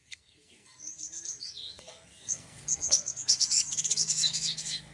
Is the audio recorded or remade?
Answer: remade